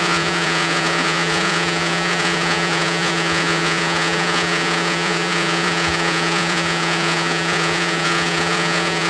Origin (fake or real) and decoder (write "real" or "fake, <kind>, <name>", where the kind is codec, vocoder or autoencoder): fake, vocoder, Vocos